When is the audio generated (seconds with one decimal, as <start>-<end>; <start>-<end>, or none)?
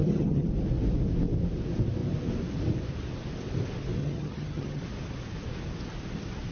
0.0-0.5; 4.0-4.8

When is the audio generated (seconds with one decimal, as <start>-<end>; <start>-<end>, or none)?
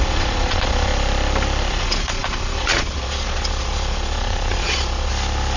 0.0-0.9; 1.7-5.1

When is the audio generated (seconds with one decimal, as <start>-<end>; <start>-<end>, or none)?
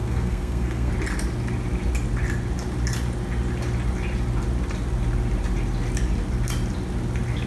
0.0-0.9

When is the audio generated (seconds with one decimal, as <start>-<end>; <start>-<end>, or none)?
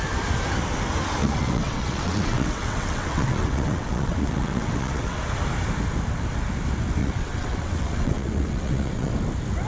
1.2-5.2; 7.0-9.1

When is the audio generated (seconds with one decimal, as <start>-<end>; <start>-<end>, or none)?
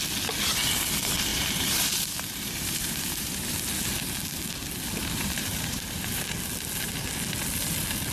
1.3-3.6; 5.0-6.2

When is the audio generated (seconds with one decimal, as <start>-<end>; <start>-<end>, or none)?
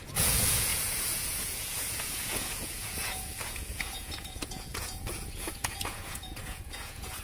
0.0-7.2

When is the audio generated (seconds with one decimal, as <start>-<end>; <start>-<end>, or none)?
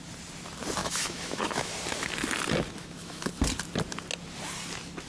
0.8-1.7; 2.8-3.3